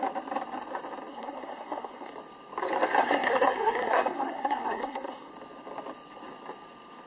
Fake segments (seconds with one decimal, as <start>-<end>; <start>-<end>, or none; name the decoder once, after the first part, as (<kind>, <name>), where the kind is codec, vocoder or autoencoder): 1.1-2.1 (codec, SNAC); 3.0-5.3